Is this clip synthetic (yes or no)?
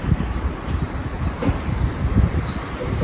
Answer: yes